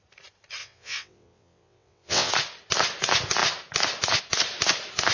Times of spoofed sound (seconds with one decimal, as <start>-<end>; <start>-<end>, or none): 0.6-2.3